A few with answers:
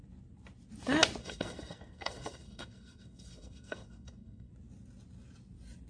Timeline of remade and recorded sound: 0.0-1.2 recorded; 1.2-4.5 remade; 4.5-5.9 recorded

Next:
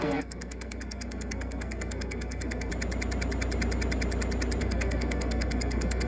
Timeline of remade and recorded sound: 0.0-2.7 remade; 2.7-4.6 recorded; 4.6-6.1 remade